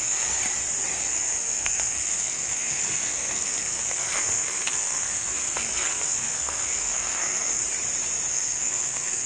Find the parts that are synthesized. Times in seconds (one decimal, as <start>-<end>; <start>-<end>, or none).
0.0-0.4; 1.0-7.6; 8.3-9.3